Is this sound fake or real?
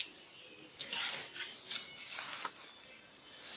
real